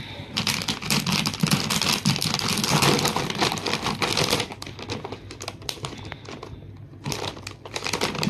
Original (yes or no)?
yes